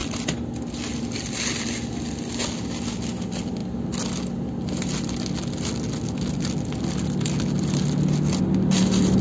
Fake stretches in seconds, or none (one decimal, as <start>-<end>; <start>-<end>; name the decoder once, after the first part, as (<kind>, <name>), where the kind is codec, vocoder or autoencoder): none